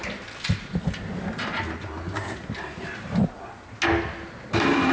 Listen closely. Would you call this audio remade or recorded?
recorded